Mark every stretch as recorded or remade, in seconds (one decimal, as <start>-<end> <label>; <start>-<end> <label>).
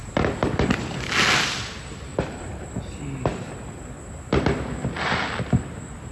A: 0.0-1.1 remade; 1.1-2.1 recorded; 2.1-2.8 remade; 2.8-6.1 recorded